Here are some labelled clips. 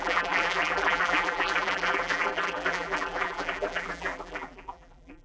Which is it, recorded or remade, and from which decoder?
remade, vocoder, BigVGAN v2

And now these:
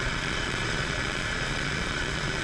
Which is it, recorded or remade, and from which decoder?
remade, vocoder, Vocos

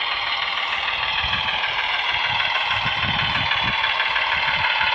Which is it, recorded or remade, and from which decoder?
remade, vocoder, BigVGAN v2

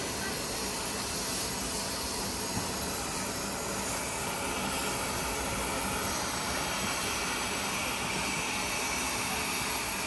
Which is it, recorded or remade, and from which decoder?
recorded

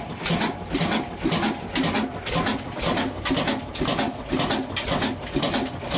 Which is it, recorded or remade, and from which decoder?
recorded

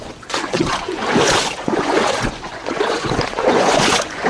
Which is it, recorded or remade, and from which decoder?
remade, vocoder, Vocos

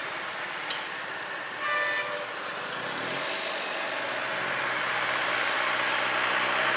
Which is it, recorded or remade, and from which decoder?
recorded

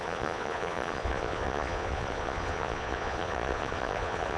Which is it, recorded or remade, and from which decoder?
remade, vocoder, Vocos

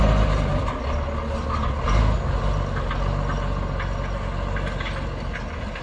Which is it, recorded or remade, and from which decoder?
recorded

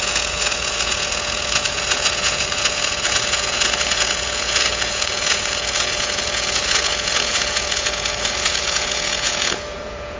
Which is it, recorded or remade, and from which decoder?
remade, vocoder, Vocos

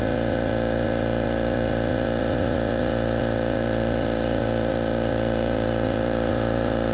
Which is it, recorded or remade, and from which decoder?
remade, vocoder, Vocos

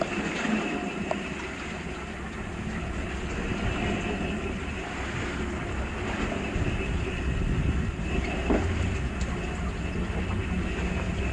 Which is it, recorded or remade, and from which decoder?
recorded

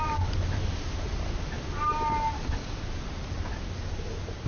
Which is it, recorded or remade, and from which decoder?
recorded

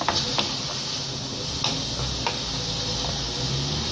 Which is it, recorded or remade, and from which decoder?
recorded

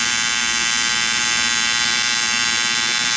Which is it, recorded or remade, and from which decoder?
recorded